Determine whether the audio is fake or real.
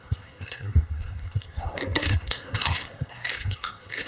fake